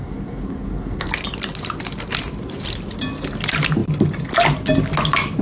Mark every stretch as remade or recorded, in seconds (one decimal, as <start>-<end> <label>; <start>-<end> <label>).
0.0-1.1 remade; 1.1-5.4 recorded